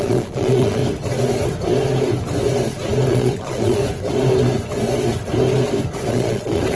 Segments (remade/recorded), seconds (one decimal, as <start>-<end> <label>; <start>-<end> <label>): 0.0-0.8 remade; 0.8-3.1 recorded; 3.1-3.8 remade; 3.8-6.1 recorded; 6.1-6.8 remade